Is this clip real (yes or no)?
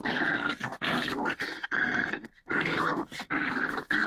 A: no